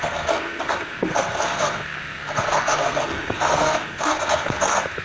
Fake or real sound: fake